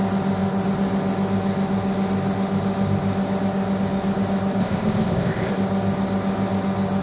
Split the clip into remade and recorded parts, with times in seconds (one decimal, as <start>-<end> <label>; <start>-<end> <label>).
0.0-4.6 recorded; 4.6-5.5 remade; 5.5-7.0 recorded